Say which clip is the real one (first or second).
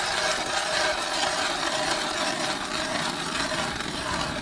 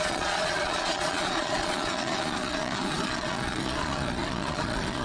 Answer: first